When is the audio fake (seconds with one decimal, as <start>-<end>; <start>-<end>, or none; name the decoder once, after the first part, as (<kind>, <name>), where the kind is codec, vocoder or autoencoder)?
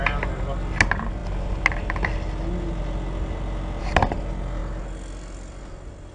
none